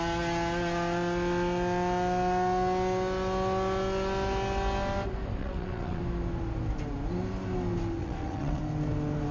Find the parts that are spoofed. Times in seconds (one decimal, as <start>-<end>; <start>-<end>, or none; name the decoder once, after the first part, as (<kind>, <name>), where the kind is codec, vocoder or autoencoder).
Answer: 5.4-6.0 (vocoder, WaveNeXt); 8.0-8.6